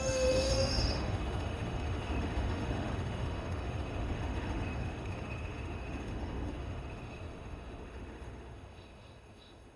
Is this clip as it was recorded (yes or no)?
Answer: no